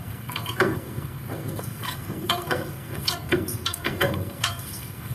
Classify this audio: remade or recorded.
remade